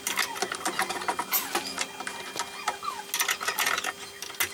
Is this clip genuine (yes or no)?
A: yes